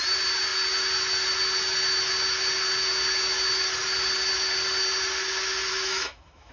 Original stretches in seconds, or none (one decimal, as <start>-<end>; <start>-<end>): 0.0-5.7